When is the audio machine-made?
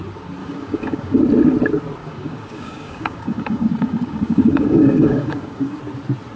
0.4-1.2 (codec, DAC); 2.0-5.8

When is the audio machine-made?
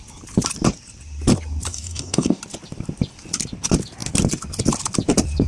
1.7-2.4 (codec, DAC)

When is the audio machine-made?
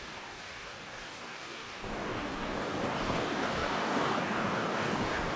0.0-5.4 (codec, DAC)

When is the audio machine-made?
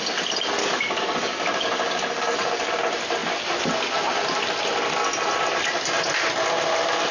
0.6-2.8 (codec, DAC)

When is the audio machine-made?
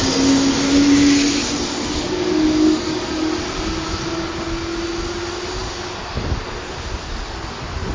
1.7-3.4 (codec, DAC)